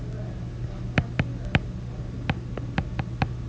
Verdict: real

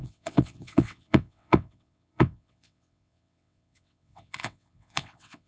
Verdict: fake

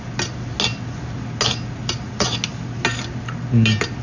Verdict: real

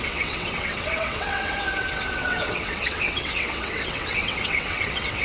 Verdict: fake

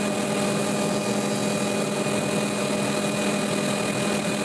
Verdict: real